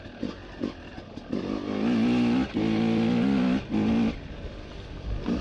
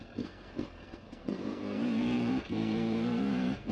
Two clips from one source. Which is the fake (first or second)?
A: second